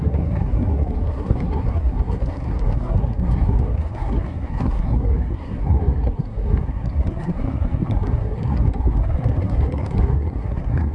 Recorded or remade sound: remade